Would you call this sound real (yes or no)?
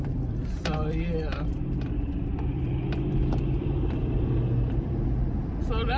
no